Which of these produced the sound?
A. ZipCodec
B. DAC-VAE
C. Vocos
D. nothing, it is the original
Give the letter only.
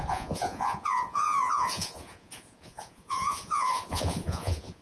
C